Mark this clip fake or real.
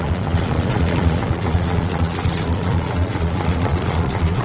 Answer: fake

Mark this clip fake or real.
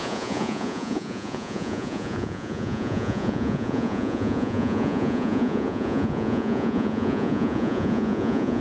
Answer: fake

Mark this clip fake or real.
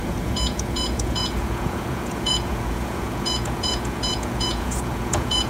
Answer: fake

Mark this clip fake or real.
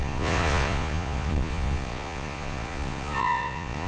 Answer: fake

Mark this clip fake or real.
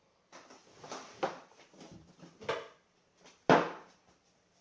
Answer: real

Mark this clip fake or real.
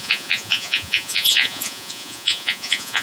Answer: fake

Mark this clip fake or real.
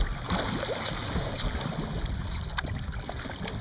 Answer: real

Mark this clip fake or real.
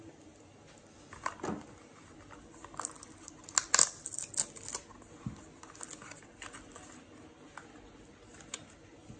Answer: real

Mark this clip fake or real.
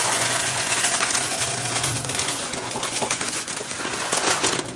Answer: fake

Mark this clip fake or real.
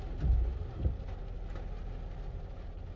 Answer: real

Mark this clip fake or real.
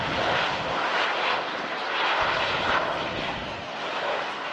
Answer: real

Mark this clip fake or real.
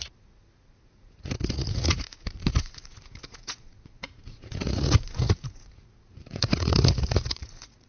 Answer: fake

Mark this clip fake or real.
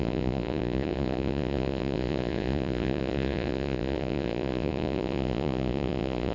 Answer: fake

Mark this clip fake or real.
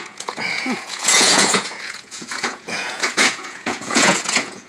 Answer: fake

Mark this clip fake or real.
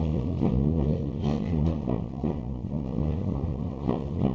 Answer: fake